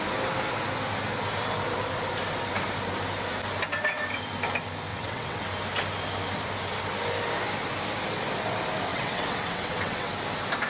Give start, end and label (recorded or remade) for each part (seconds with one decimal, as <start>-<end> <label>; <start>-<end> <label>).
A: 0.0-4.9 recorded; 4.9-5.4 remade; 5.4-8.9 recorded; 8.9-10.1 remade; 10.1-10.7 recorded